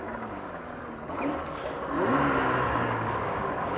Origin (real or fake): real